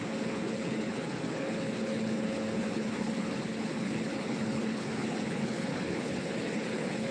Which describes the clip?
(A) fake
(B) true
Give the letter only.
A